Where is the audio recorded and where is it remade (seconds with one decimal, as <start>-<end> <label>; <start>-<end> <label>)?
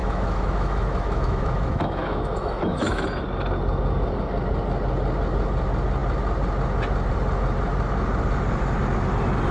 0.0-3.0 remade; 3.0-9.5 recorded